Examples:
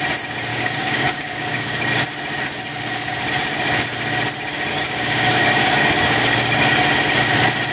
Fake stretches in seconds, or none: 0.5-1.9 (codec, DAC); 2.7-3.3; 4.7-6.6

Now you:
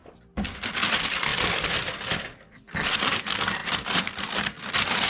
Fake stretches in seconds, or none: none

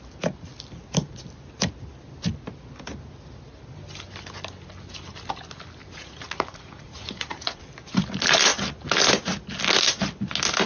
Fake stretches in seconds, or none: 5.8-7.6 (vocoder, Vocos)

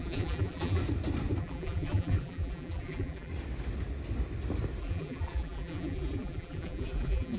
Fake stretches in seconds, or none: 0.0-0.8 (vocoder, BigVGAN v2); 1.4-3.3; 4.8-7.4

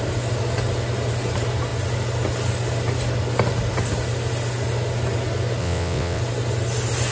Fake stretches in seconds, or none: 5.6-6.2 (vocoder, WaveNeXt)

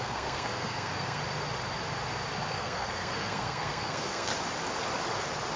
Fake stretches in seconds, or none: 0.0-1.2 (codec, SNAC); 2.5-4.3

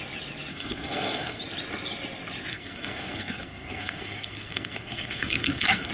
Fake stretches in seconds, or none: 0.5-1.4 (codec, SNAC); 2.5-5.9

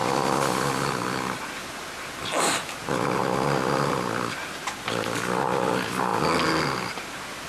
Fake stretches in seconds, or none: none